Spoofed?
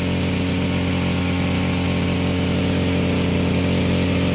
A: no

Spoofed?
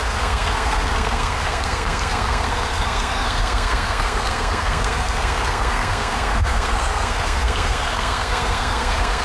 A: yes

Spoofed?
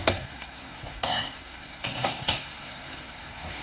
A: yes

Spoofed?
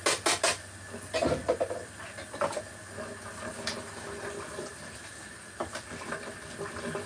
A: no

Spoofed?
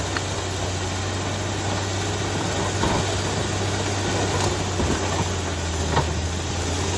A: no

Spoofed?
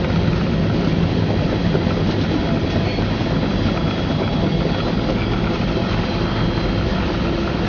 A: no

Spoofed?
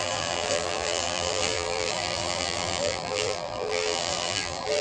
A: yes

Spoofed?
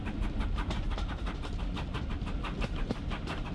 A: no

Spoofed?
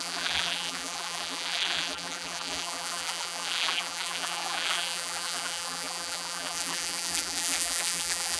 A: yes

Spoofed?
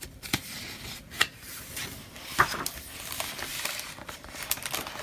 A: no